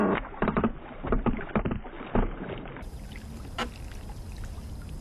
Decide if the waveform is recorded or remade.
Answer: recorded